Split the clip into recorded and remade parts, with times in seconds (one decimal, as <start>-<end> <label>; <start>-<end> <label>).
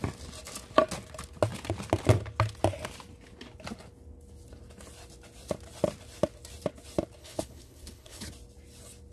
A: 0.0-7.2 recorded; 7.2-8.3 remade; 8.3-9.1 recorded